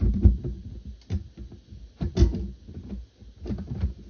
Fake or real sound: real